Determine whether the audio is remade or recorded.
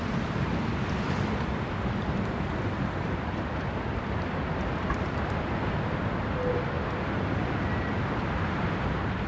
recorded